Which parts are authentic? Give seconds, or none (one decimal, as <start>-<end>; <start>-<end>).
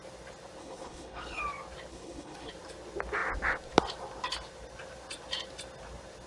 0.0-0.6; 1.4-1.9; 2.5-6.3